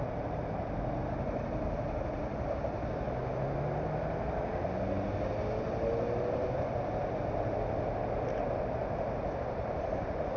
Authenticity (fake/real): real